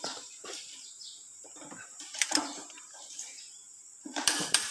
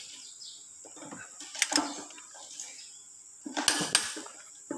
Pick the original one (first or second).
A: second